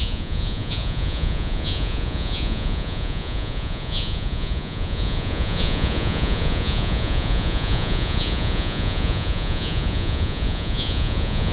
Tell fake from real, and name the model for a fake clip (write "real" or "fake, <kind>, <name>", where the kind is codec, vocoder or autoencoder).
fake, vocoder, Vocos